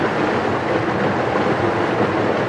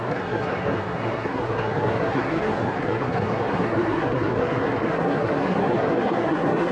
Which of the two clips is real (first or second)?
first